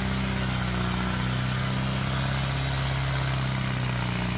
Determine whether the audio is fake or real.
real